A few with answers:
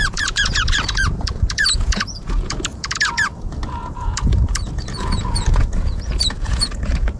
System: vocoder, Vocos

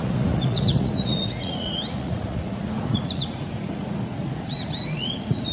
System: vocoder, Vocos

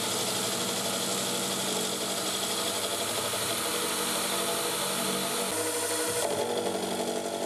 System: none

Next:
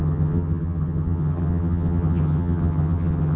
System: vocoder, HiFi-GAN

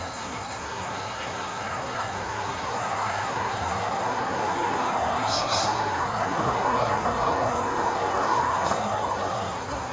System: codec, SNAC